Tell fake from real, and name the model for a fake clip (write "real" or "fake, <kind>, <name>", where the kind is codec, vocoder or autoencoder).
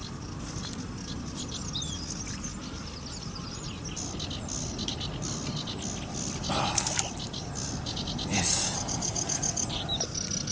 real